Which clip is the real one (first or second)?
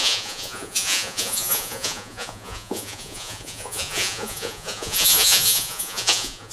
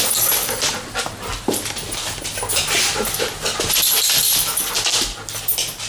second